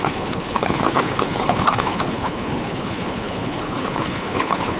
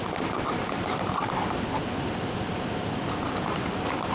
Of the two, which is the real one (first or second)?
second